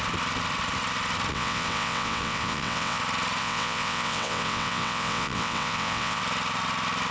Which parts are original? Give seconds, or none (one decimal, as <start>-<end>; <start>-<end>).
0.0-1.3; 3.0-3.4; 6.2-7.1